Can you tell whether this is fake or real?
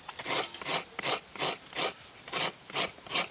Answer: real